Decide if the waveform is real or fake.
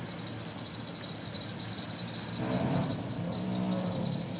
real